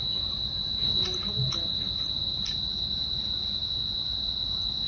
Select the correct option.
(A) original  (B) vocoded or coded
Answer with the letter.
A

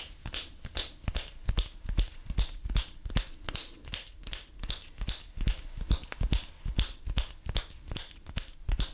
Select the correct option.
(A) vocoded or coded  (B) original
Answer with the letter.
B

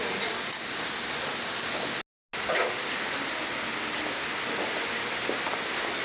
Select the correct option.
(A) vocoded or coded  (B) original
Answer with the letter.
B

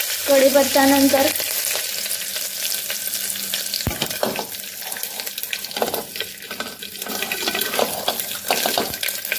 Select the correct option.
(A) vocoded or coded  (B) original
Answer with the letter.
B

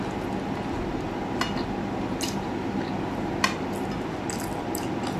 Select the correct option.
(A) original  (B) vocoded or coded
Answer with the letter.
A